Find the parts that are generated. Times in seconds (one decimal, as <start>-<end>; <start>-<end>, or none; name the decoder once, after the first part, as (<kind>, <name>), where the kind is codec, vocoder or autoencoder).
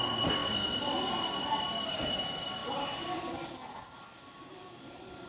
none